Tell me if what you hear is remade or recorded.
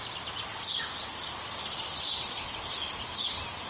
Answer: recorded